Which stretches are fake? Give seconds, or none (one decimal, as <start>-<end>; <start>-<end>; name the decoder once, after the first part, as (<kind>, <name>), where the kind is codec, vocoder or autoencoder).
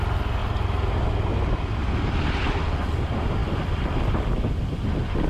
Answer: 0.4-1.1 (vocoder, BigVGAN v2); 1.7-2.6